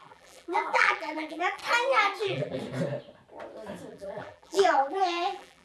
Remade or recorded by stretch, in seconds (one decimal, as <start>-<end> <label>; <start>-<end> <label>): 0.0-1.6 remade; 1.6-2.2 recorded; 2.2-2.6 remade; 2.6-3.9 recorded; 3.9-5.6 remade